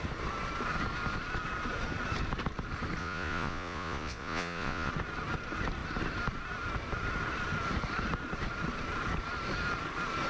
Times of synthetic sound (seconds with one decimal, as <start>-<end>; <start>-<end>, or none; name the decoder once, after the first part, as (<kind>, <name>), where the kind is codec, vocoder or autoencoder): 3.0-4.9 (vocoder, Vocos)